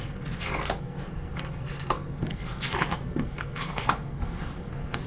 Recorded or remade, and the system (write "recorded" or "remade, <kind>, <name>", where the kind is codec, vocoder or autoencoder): remade, codec, SNAC